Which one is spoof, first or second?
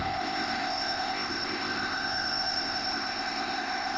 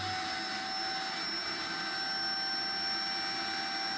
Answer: first